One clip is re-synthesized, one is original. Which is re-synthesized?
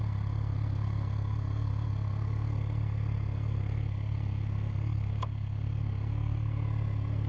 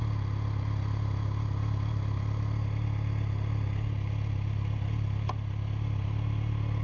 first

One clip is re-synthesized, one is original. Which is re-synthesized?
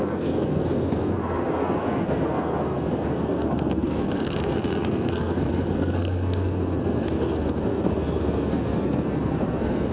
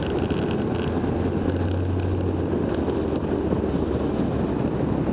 first